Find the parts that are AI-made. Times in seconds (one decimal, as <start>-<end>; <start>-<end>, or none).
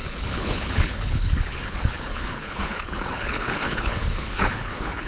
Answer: 0.0-5.1